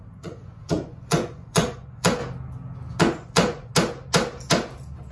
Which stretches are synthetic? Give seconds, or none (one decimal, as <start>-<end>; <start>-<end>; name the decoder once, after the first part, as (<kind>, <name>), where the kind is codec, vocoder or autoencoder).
0.0-2.2 (vocoder, Vocos); 3.0-3.7